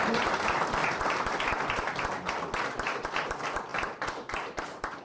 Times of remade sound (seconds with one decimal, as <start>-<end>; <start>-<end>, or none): none